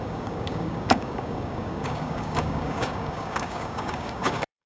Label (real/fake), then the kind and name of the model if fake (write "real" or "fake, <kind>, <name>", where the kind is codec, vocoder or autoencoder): fake, codec, DAC